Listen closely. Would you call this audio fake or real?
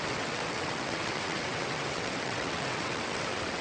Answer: fake